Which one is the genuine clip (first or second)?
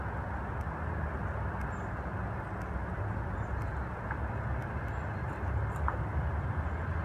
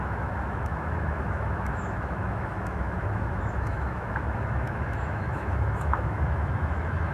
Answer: first